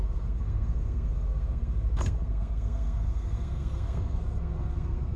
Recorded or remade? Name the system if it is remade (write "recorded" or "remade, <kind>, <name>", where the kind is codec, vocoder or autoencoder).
remade, codec, SNAC